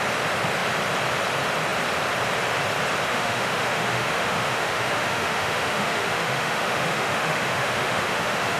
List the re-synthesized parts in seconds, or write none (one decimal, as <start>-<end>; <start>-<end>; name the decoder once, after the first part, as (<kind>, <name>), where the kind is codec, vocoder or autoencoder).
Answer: 3.1-8.6 (autoencoder, DAC-VAE)